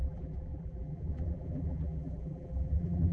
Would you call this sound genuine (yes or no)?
no